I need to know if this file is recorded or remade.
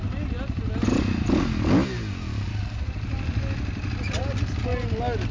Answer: recorded